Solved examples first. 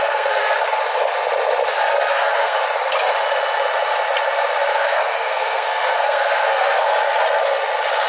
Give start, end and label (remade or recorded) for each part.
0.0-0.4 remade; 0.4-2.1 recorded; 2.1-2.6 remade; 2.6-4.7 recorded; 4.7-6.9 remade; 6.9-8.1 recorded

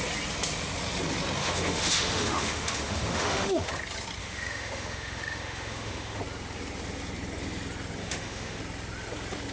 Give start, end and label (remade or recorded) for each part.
0.0-1.4 recorded; 1.4-3.7 remade; 3.7-4.2 recorded; 4.2-6.2 remade; 6.2-8.0 recorded; 8.0-8.6 remade; 8.6-9.5 recorded

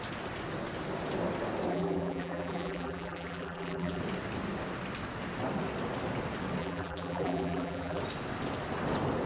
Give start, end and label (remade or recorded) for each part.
0.0-1.7 recorded; 1.7-4.0 remade; 4.0-6.6 recorded; 6.6-8.0 remade; 8.0-9.3 recorded

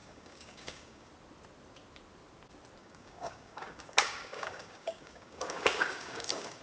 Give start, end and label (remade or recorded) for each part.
0.0-1.1 remade; 1.1-2.8 recorded; 2.8-6.6 remade

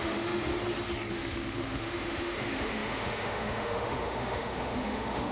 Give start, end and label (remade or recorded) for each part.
0.0-0.5 remade; 0.5-1.1 recorded; 1.1-5.3 remade

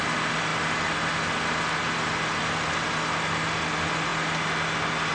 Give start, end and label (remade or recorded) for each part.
0.0-5.1 recorded

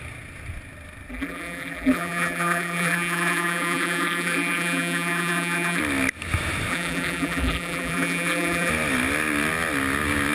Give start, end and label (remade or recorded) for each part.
0.0-1.1 recorded; 1.1-5.8 remade; 5.8-6.7 recorded; 6.7-8.7 remade; 8.7-10.3 recorded